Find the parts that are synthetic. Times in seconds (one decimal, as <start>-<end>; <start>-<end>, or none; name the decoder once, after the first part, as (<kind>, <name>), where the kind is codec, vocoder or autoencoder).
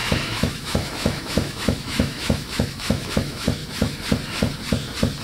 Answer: 0.0-3.6 (autoencoder, DAC-VAE)